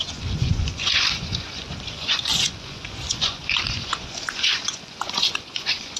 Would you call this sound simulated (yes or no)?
yes